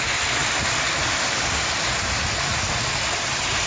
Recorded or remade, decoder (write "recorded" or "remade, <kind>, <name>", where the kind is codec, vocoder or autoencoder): recorded